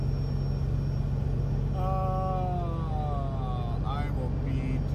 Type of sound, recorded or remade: recorded